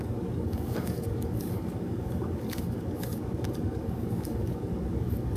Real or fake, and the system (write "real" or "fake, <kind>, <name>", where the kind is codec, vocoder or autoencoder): fake, codec, DAC